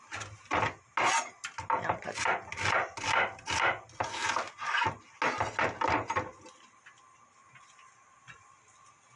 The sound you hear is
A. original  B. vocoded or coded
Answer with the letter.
A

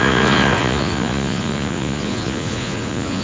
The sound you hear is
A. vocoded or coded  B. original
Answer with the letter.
A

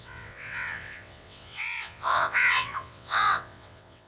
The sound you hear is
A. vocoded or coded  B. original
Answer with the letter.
A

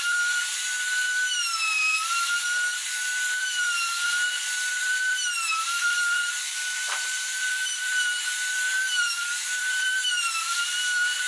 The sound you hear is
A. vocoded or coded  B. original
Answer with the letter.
A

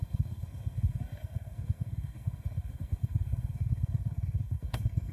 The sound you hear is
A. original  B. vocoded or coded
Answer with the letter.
B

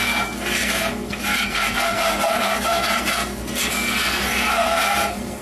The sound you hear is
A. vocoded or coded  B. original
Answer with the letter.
A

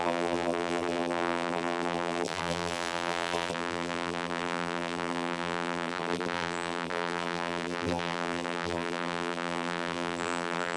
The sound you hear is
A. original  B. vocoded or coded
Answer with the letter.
B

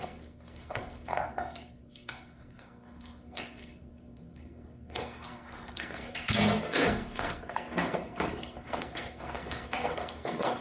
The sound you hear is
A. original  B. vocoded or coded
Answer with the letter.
B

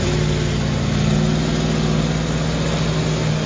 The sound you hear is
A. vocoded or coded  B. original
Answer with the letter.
B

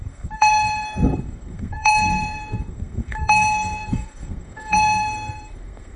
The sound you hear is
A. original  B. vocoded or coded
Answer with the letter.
B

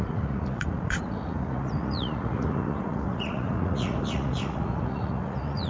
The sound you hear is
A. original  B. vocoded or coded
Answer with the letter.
B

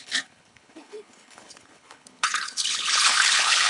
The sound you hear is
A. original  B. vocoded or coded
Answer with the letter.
B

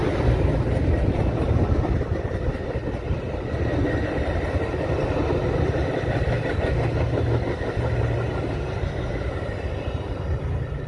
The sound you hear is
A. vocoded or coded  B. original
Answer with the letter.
B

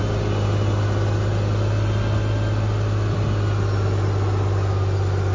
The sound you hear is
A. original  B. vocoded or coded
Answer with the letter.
A